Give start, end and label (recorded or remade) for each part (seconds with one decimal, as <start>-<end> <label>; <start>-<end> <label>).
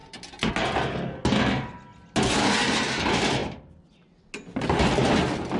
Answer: 0.0-5.6 recorded